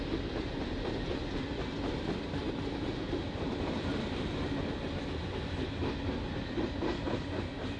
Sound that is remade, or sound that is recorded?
recorded